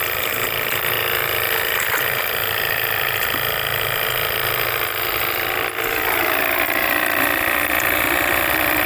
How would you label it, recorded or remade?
recorded